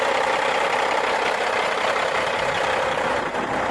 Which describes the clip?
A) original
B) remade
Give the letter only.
A